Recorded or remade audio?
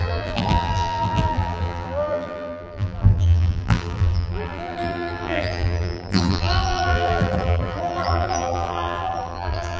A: remade